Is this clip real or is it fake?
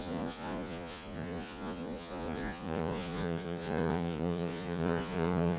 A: fake